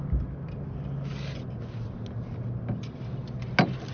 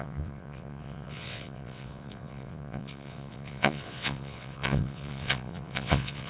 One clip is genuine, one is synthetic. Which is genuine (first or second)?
first